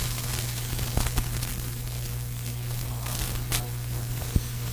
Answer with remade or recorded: remade